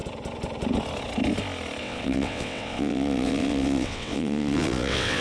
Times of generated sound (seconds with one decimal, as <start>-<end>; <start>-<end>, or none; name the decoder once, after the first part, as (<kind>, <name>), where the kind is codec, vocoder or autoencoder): 1.8-5.2 (vocoder, WaveNeXt)